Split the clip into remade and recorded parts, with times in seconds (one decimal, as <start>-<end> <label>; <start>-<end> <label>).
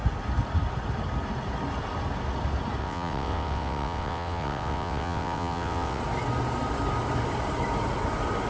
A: 0.0-2.8 recorded; 2.8-6.0 remade; 6.0-8.5 recorded